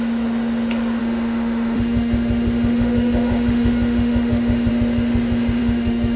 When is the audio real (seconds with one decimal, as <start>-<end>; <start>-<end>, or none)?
0.0-1.0; 4.7-5.6